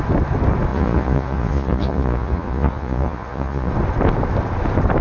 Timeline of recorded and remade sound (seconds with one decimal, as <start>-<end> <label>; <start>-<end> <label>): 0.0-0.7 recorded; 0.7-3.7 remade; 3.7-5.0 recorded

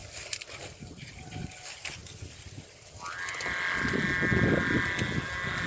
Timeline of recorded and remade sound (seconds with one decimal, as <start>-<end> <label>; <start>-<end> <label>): 0.0-5.7 recorded

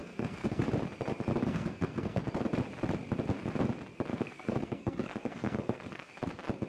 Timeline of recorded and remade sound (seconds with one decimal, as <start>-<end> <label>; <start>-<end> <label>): 0.0-0.6 remade; 0.6-1.4 recorded; 1.4-2.2 remade; 2.2-4.1 recorded; 4.1-6.1 remade; 6.1-6.7 recorded